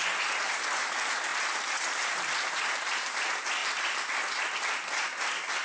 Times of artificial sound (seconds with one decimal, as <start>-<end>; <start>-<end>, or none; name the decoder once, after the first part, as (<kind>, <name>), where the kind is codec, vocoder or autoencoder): 1.3-2.6 (vocoder, BigVGAN v2); 3.6-4.4